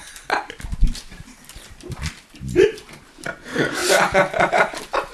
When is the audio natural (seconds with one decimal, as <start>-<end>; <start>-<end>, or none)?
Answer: 0.0-2.2; 3.8-4.5